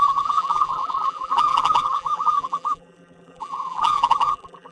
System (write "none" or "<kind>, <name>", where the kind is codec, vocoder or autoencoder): vocoder, BigVGAN v2